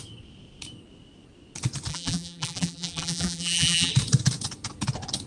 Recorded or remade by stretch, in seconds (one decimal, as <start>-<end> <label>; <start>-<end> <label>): 0.0-1.9 recorded; 1.9-3.9 remade; 3.9-5.3 recorded